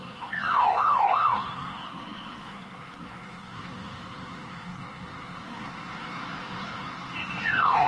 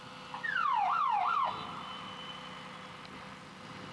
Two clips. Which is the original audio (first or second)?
second